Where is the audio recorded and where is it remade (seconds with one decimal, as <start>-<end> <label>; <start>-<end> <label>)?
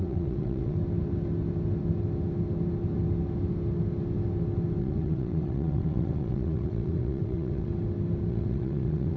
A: 0.0-0.8 remade; 0.8-4.8 recorded; 4.8-7.7 remade; 7.7-8.3 recorded; 8.3-9.2 remade